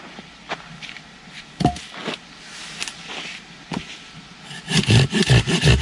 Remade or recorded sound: recorded